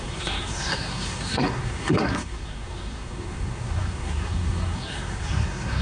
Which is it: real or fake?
fake